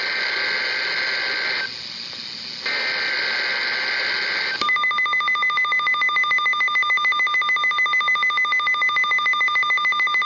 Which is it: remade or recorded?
recorded